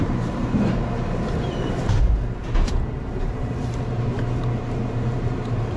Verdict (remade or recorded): remade